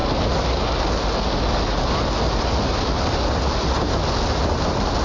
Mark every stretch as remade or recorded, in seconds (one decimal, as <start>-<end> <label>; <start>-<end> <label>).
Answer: 0.0-5.0 recorded

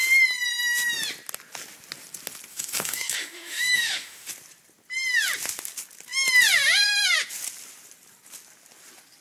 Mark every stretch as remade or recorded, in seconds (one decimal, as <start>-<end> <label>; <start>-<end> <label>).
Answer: 0.0-2.5 recorded; 2.5-4.3 remade; 4.3-9.2 recorded

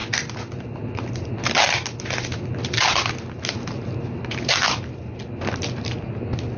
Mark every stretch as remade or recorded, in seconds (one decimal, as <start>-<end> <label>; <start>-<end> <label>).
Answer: 0.0-6.6 recorded